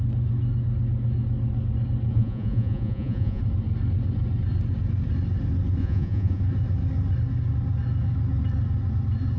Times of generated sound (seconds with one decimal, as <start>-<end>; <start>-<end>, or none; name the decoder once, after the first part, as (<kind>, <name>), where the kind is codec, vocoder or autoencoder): 2.1-3.4 (vocoder, Vocos); 5.8-6.4